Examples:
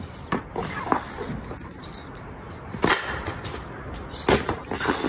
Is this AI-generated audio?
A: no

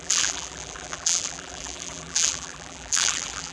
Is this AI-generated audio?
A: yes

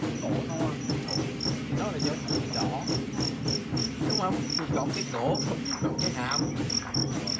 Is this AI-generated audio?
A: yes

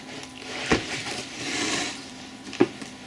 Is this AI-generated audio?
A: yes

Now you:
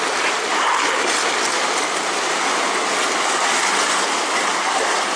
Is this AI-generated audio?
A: no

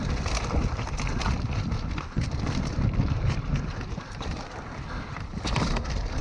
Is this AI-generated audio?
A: yes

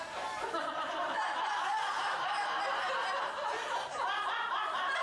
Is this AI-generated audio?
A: yes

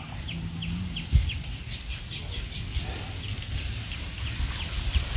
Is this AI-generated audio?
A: no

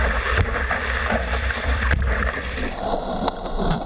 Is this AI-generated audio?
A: yes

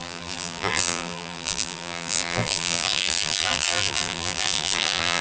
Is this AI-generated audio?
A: yes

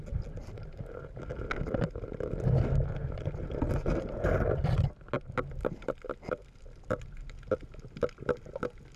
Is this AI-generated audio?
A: no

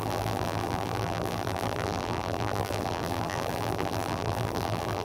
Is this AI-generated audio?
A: yes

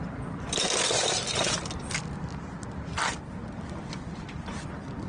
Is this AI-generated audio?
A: yes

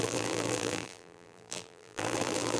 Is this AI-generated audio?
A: yes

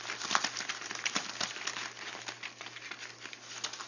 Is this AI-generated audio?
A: no